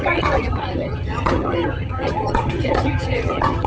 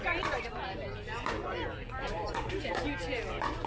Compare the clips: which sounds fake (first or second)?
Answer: first